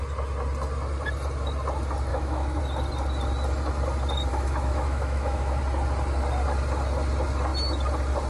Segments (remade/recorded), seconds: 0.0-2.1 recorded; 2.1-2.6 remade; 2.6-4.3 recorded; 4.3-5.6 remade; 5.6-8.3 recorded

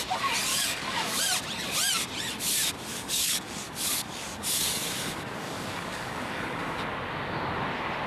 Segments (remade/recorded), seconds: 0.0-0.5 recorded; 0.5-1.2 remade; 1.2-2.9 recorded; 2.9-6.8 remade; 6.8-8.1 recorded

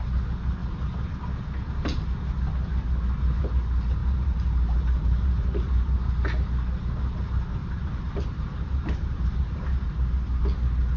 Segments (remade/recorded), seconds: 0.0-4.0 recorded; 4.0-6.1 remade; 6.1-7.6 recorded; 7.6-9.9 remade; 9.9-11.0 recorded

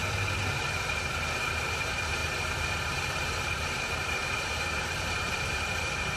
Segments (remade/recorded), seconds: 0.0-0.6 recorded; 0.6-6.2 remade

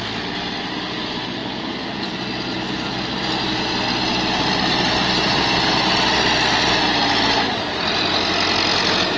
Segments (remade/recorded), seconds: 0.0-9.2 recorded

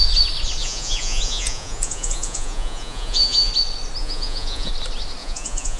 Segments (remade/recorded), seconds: 0.0-0.6 recorded; 0.6-3.5 remade; 3.5-4.0 recorded; 4.0-4.7 remade; 4.7-5.2 recorded; 5.2-5.8 remade

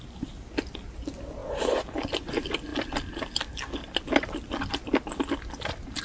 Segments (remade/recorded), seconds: 0.0-6.0 recorded

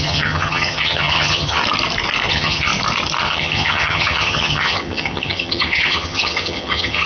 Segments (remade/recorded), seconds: 0.0-1.6 remade; 1.6-2.3 recorded; 2.3-2.7 remade; 2.7-3.2 recorded; 3.2-7.1 remade